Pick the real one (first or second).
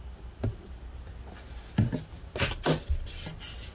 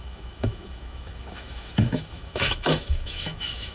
first